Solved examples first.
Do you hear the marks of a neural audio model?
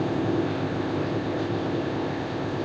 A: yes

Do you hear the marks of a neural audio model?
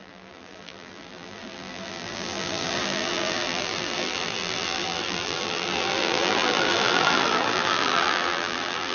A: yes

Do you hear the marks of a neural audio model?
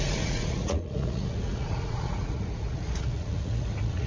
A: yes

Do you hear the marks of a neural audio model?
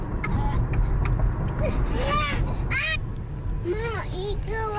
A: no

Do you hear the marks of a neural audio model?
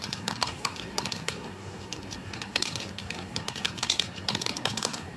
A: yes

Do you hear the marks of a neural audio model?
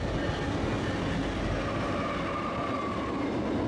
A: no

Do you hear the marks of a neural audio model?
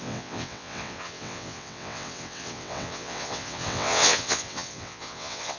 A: yes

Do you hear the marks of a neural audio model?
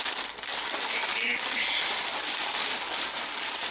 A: no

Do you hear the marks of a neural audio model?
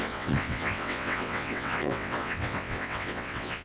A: yes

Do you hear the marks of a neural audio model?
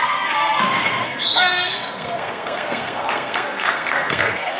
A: yes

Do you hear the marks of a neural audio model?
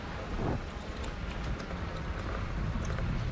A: no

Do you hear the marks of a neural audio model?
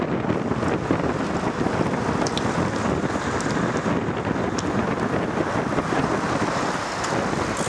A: no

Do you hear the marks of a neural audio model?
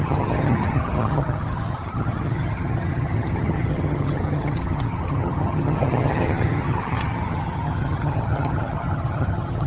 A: yes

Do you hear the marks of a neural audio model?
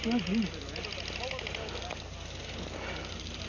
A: no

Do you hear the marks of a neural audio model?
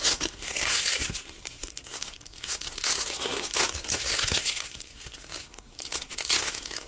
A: yes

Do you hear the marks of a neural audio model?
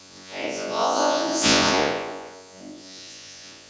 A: yes